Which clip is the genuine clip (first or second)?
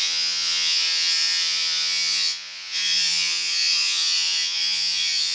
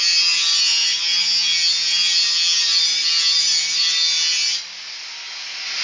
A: second